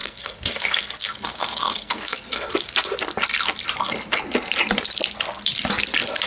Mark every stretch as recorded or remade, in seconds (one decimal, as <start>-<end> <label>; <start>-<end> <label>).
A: 0.0-2.5 remade; 2.5-6.3 recorded